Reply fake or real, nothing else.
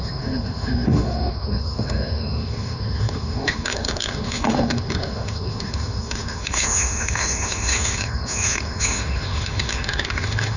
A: fake